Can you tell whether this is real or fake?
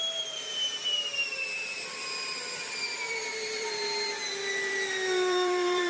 fake